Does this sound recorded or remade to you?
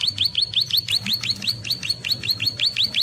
recorded